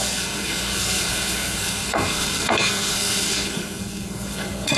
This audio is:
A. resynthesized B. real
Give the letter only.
A